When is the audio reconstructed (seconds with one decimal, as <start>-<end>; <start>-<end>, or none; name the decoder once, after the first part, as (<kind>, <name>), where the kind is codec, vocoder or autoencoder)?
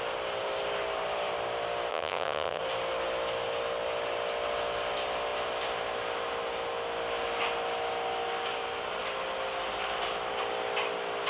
1.9-2.6 (vocoder, HiFi-GAN)